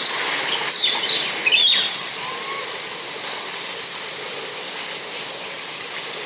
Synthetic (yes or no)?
yes